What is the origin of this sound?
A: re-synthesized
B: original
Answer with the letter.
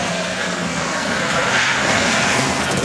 A